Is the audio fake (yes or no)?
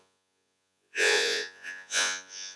yes